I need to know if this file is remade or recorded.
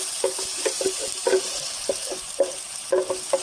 recorded